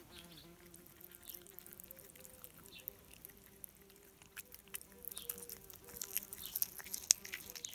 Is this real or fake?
real